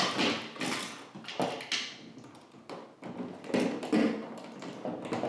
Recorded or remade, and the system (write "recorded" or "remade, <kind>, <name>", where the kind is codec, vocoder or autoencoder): recorded